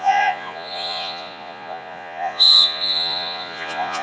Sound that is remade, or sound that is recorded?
remade